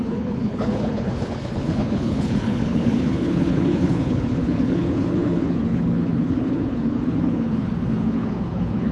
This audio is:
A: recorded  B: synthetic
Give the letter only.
B